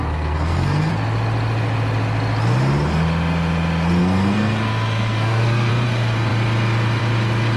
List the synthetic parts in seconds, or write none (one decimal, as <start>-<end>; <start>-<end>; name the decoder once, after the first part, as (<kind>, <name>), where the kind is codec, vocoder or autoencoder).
0.0-0.9 (codec, SNAC); 4.0-5.7